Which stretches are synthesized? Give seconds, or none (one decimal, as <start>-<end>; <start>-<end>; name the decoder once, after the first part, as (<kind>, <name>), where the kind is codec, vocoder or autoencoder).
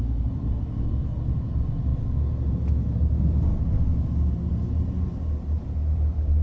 0.0-1.9 (vocoder, BigVGAN v2); 2.5-6.4